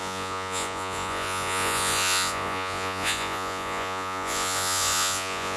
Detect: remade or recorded remade